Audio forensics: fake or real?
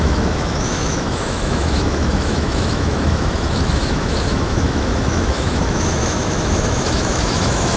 fake